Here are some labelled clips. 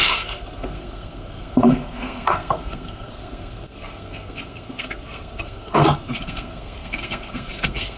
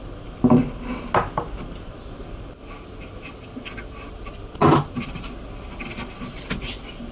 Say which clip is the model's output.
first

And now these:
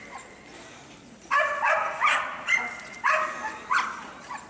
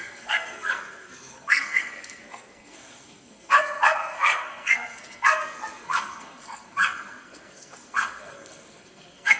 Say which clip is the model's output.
second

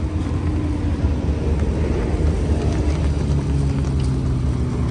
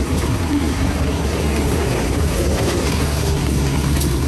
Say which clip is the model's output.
second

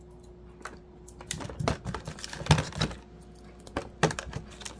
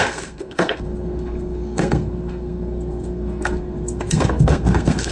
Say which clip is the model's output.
second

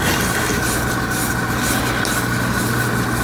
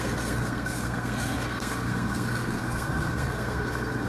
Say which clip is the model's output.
second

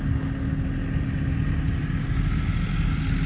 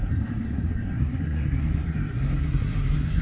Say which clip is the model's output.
second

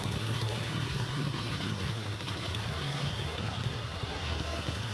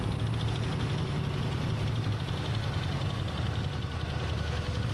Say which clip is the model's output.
first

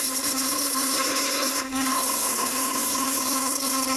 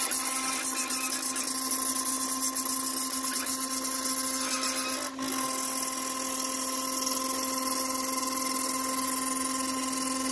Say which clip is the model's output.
first